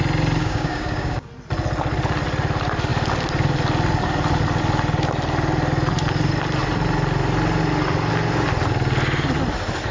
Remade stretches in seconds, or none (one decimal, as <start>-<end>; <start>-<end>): 0.4-1.3